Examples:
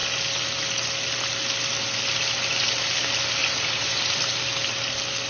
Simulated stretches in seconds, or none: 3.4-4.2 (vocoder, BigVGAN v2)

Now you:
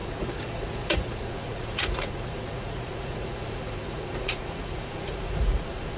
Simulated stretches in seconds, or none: 0.0-6.0 (vocoder, Vocos)

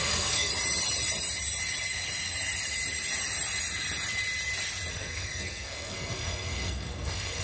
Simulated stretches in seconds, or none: 0.0-0.5 (codec, SNAC); 4.9-7.4

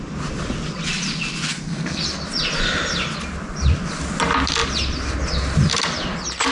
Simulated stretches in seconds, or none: 1.5-2.0 (codec, SNAC)

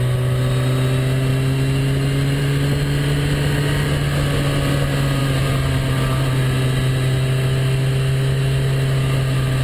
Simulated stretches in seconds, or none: none

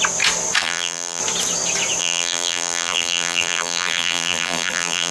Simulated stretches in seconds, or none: 0.6-1.2 (vocoder, BigVGAN v2); 2.0-5.1